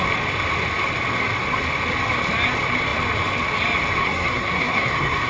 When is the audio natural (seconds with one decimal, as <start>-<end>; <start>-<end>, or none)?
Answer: 0.0-4.0